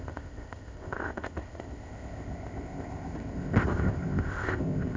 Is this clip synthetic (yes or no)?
yes